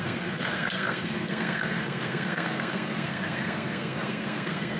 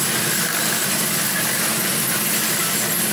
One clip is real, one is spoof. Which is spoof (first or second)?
first